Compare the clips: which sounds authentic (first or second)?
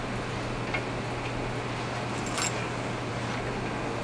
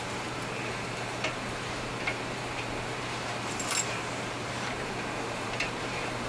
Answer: first